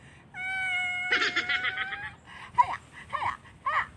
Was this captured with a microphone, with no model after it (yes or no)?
yes